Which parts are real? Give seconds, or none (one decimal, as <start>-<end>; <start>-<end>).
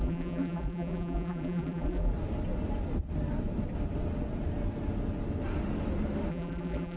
2.1-6.3